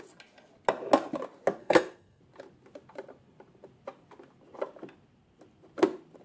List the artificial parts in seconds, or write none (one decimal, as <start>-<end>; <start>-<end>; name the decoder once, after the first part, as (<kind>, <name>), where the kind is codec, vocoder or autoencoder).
1.6-2.2 (codec, SNAC)